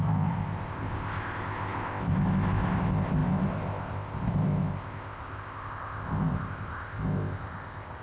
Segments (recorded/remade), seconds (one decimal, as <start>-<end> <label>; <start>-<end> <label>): 0.0-8.0 remade